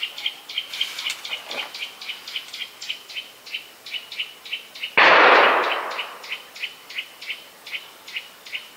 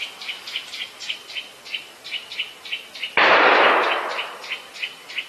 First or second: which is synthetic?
second